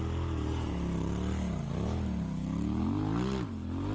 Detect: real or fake real